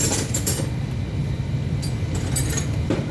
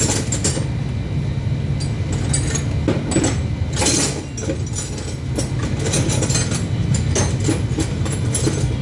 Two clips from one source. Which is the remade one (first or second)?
first